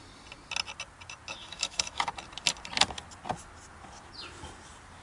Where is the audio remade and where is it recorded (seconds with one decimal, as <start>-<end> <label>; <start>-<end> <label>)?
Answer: 0.0-1.4 recorded; 1.4-2.1 remade; 2.1-5.0 recorded